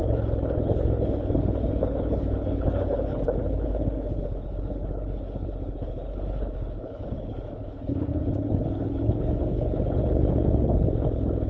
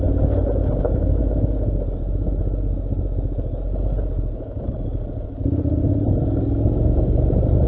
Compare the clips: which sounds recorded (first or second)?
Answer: second